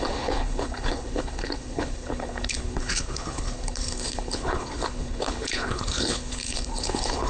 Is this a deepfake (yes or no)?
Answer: yes